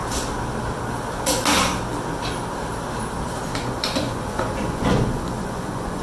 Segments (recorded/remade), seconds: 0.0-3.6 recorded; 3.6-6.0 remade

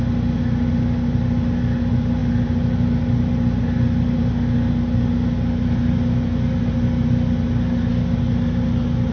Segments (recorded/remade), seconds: 0.0-9.1 recorded